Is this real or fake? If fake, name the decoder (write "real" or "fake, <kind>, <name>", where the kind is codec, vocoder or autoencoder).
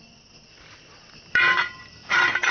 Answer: real